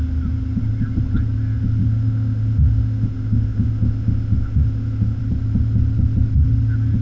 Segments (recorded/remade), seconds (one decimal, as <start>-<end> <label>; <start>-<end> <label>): 0.0-1.8 recorded; 1.8-5.2 remade; 5.2-7.0 recorded